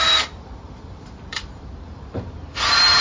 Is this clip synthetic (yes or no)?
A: yes